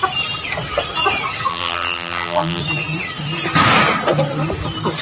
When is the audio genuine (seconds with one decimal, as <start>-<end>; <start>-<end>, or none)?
0.0-1.5; 2.6-5.0

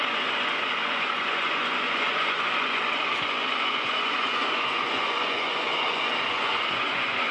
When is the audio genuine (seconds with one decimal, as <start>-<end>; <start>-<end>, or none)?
none

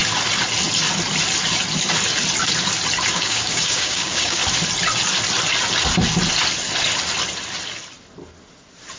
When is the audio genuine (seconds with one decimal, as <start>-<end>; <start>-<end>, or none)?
0.0-3.1; 4.4-9.0

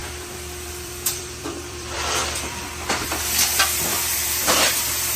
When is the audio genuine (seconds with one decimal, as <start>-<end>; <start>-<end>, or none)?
3.1-3.9; 4.8-5.2

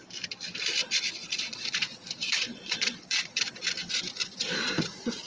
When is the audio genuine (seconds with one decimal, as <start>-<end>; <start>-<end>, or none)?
0.0-1.2; 1.8-2.5; 3.4-4.2